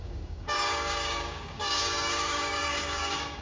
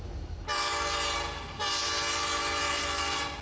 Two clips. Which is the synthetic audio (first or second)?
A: first